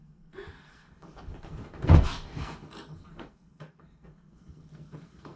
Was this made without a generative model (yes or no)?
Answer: no